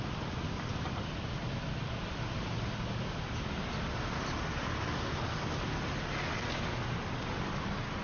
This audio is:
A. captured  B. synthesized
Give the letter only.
A